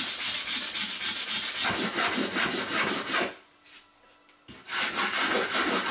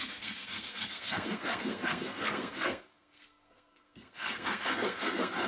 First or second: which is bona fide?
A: first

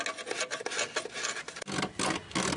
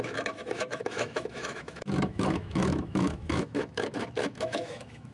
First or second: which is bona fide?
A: first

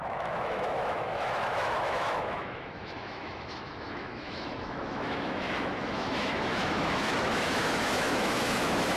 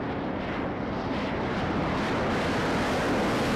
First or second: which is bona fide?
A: second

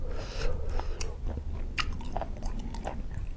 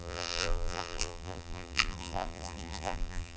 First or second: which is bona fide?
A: first